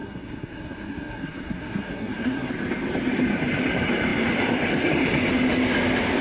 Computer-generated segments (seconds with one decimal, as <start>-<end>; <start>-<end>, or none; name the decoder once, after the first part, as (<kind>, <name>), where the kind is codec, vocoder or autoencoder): 0.0-2.5 (codec, SNAC)